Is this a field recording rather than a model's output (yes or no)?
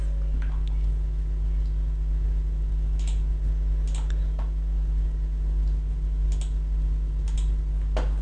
yes